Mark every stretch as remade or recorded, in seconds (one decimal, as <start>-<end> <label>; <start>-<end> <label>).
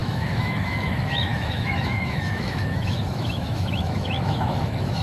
0.0-5.0 remade